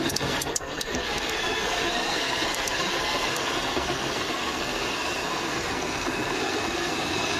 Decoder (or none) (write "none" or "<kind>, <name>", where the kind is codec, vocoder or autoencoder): codec, SNAC